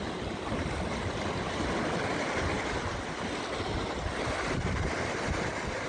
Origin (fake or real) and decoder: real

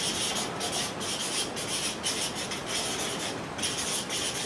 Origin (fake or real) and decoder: real